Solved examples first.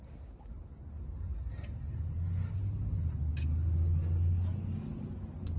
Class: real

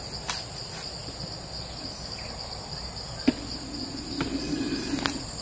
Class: real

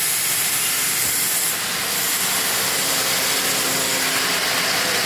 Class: real